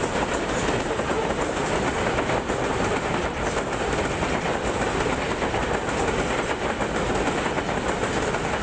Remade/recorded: recorded